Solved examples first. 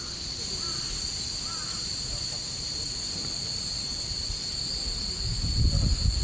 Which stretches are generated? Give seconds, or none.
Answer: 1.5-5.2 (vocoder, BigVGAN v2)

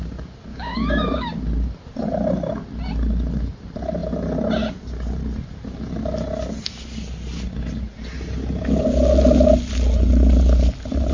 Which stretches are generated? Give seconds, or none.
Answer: 0.5-1.3 (codec, DAC)

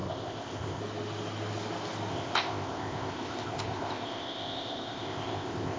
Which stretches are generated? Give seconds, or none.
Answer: 0.0-0.8 (codec, ZipCodec); 2.1-5.8

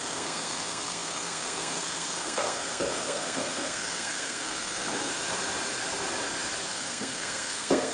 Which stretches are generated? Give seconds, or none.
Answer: 0.0-5.1 (codec, SNAC); 6.7-7.9

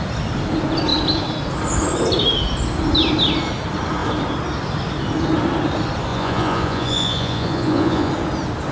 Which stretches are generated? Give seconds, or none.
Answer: 6.1-8.1 (vocoder, Vocos)

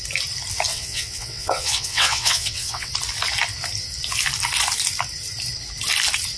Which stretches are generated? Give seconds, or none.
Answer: 0.7-2.9 (vocoder, WaveNeXt)